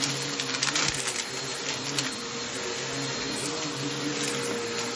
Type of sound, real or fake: real